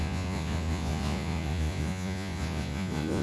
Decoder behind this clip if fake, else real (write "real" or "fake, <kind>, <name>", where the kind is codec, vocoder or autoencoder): fake, vocoder, Vocos